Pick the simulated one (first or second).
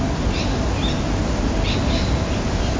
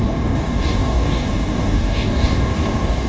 second